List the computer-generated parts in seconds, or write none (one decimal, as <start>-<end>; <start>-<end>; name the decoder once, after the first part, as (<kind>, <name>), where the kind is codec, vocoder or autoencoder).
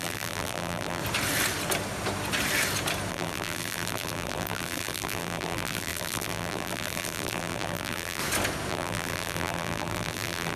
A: 0.0-1.0 (vocoder, BigVGAN v2); 3.1-8.2; 8.7-10.6